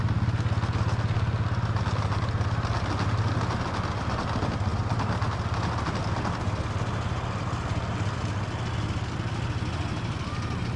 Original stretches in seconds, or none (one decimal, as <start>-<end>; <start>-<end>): 0.0-10.8